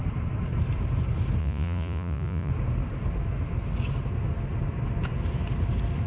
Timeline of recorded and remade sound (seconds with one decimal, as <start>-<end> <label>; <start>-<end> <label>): 0.0-1.4 recorded; 1.4-2.5 remade; 2.5-6.1 recorded